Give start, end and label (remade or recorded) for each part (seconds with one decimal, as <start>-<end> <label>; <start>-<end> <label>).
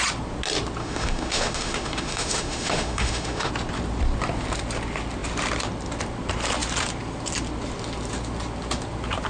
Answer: 0.0-0.8 recorded; 0.8-3.5 remade; 3.5-9.3 recorded